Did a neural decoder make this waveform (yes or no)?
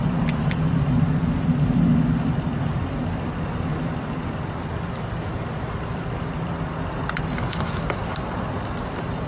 no